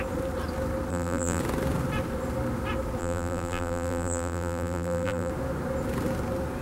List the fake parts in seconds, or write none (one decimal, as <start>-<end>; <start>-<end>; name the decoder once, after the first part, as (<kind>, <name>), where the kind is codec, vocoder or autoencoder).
0.9-1.4 (vocoder, BigVGAN v2); 3.0-5.3